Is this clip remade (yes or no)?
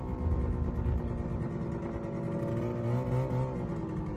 no